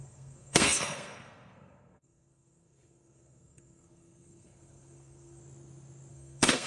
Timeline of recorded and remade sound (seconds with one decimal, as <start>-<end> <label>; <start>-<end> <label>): 0.0-5.4 remade; 5.4-6.1 recorded; 6.1-6.7 remade